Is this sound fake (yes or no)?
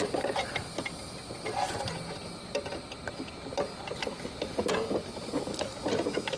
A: no